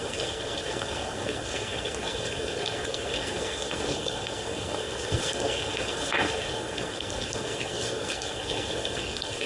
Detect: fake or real fake